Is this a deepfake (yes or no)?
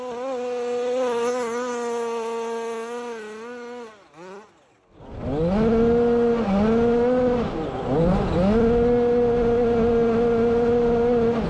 no